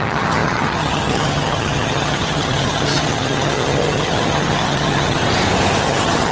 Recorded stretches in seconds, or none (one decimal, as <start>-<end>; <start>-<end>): 5.2-5.8